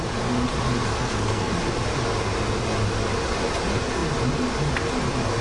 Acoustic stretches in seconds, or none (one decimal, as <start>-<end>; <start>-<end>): 0.0-0.8; 1.5-5.4